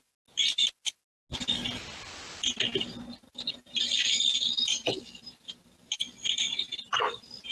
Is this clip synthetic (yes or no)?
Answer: no